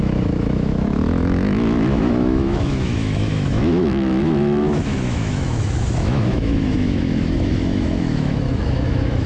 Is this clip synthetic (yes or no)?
yes